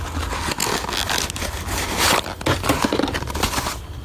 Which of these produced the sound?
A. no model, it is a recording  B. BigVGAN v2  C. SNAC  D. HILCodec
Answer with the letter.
A